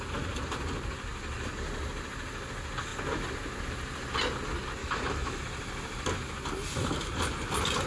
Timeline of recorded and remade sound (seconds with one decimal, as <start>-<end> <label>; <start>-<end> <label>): 0.0-4.8 recorded; 4.8-5.4 remade; 5.4-7.9 recorded